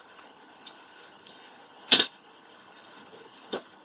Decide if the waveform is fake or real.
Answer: fake